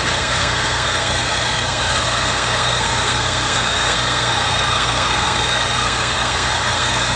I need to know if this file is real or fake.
fake